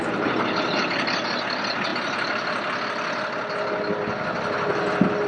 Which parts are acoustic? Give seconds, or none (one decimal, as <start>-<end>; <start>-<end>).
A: 0.0-5.3